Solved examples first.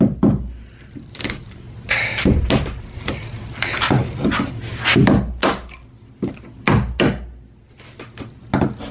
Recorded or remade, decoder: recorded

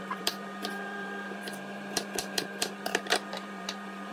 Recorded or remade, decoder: remade, vocoder, BigVGAN v2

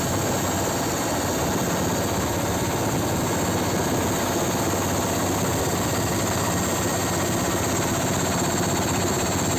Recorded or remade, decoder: recorded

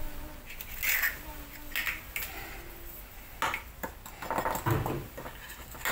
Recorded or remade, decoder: recorded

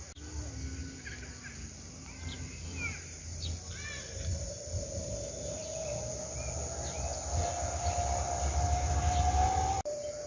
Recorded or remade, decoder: recorded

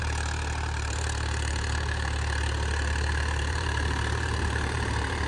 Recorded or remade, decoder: remade, vocoder, BigVGAN v2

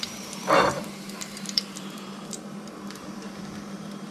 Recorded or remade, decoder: remade, vocoder, BigVGAN v2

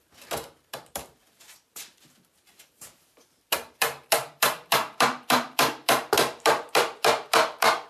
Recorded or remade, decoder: remade, vocoder, BigVGAN v2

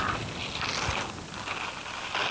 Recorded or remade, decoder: recorded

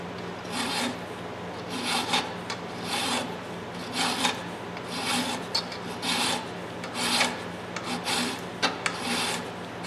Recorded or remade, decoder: recorded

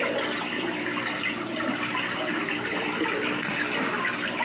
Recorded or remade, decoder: recorded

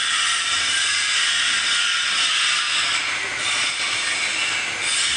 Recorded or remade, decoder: recorded